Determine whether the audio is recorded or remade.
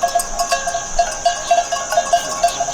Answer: recorded